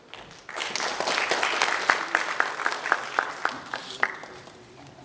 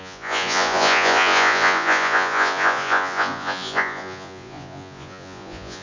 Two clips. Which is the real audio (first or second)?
first